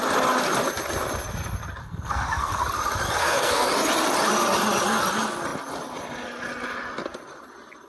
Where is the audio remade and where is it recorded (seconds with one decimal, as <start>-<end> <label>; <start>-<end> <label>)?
0.0-1.8 recorded; 1.8-2.6 remade; 2.6-3.2 recorded; 3.2-3.7 remade; 3.7-7.9 recorded